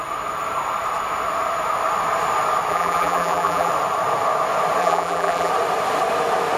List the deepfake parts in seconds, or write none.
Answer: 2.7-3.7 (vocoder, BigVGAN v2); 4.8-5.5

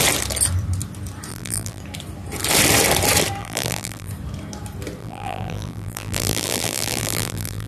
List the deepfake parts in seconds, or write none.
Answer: 1.3-1.8 (vocoder, BigVGAN v2); 3.4-4.1; 5.0-7.7

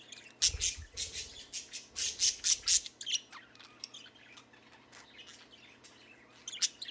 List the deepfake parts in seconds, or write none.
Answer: none

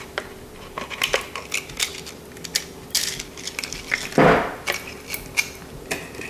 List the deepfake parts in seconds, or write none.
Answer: none

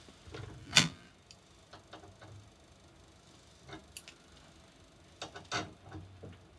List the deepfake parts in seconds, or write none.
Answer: 0.6-1.1 (vocoder, BigVGAN v2)

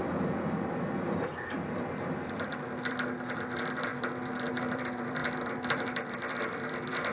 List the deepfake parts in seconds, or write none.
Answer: 0.0-7.1 (vocoder, BigVGAN v2)

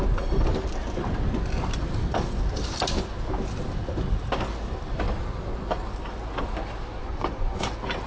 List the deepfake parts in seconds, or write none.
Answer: 7.0-7.6 (vocoder, Vocos)

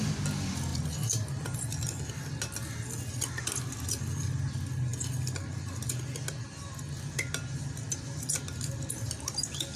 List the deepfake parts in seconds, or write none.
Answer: none